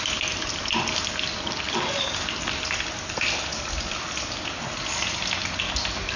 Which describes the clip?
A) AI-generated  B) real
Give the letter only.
B